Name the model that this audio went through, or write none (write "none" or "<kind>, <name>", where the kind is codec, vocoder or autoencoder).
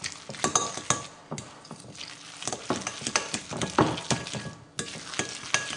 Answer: none